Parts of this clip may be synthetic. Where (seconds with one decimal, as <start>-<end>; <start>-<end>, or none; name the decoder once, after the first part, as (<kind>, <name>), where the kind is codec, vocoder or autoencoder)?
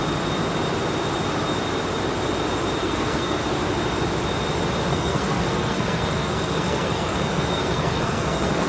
2.8-3.4 (codec, SNAC); 4.9-8.7